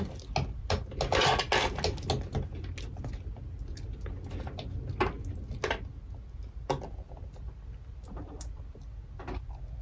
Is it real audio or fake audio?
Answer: real